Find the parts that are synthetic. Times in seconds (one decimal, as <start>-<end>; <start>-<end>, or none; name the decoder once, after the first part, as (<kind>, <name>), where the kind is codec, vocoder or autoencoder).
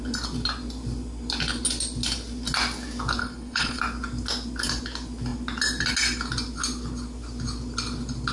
3.2-3.8 (codec, HILCodec)